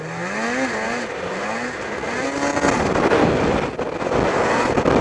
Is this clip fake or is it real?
real